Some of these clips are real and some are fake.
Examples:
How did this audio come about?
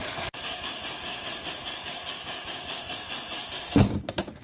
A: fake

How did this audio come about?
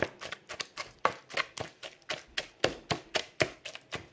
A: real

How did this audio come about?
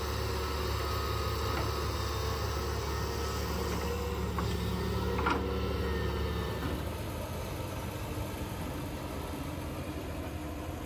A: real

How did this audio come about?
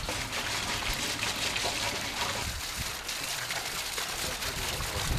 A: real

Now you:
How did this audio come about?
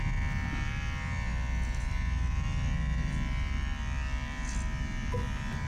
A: real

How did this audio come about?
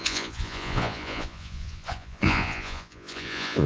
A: fake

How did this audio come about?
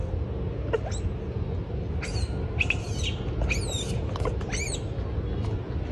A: real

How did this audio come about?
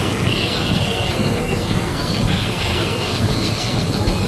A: fake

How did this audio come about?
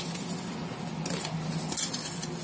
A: real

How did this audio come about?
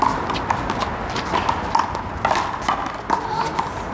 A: real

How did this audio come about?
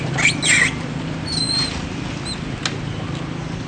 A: real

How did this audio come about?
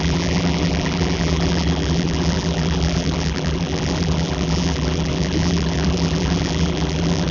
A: fake